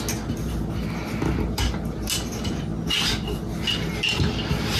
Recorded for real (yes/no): yes